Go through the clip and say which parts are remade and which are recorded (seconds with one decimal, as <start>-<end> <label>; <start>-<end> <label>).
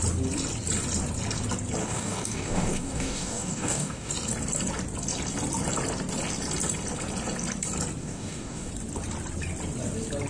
0.0-1.8 recorded; 1.8-4.1 remade; 4.1-8.0 recorded; 8.0-8.7 remade; 8.7-10.3 recorded